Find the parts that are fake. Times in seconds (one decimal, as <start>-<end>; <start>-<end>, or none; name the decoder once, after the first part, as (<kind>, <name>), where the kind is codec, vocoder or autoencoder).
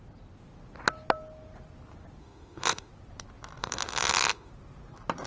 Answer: 2.2-2.9 (autoencoder, DAC-VAE); 3.6-4.5